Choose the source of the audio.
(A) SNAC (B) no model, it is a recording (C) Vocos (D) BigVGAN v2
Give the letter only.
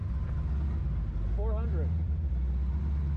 B